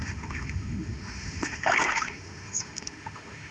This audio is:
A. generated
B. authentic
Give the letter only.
A